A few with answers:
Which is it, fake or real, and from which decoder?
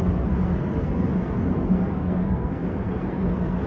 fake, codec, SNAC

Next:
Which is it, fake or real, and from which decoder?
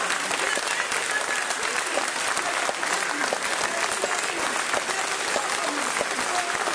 real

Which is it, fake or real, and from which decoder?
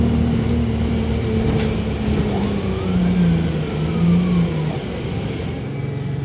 real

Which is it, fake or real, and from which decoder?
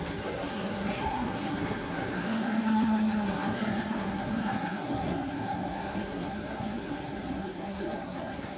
fake, codec, SNAC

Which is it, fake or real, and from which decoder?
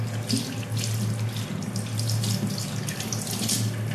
real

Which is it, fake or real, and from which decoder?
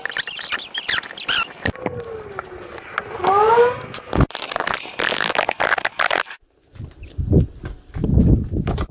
real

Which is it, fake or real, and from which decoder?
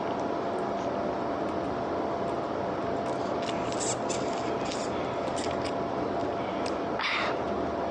real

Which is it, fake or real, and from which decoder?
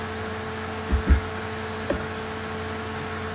real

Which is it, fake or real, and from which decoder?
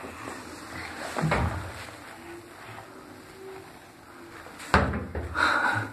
real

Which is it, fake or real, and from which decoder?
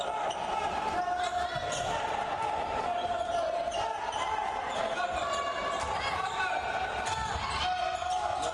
real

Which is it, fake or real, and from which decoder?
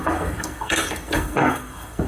fake, codec, SNAC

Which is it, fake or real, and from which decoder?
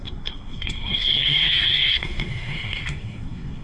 fake, codec, SNAC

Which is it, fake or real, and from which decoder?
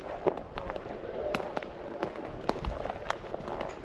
real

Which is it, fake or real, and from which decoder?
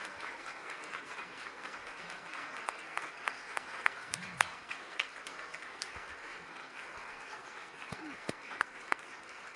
fake, codec, SNAC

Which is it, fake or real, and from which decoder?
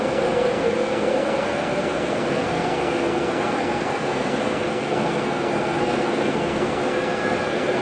fake, codec, SNAC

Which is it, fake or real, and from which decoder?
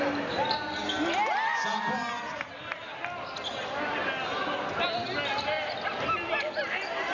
real